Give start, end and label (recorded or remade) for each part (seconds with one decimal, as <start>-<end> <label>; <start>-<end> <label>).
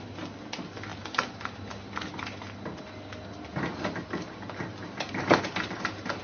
0.0-6.2 recorded